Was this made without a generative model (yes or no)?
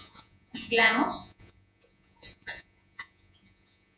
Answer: no